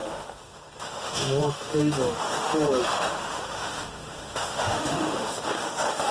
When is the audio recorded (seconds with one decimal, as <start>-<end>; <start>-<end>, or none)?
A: none